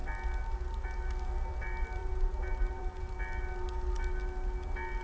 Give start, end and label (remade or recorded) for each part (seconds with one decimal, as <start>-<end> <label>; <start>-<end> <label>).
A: 0.0-2.0 recorded; 2.0-3.2 remade; 3.2-5.0 recorded